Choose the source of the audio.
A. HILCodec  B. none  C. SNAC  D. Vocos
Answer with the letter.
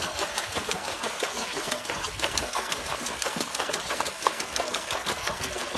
C